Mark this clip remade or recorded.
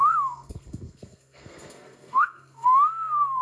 remade